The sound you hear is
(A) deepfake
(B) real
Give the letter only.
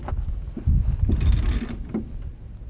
B